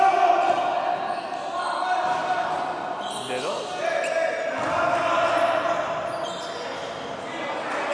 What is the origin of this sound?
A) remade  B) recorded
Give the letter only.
B